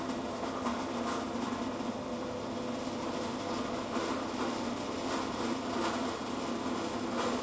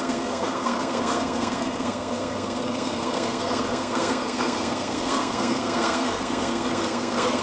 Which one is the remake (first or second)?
second